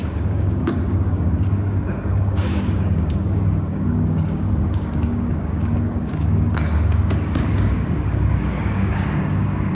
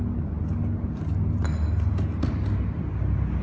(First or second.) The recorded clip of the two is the second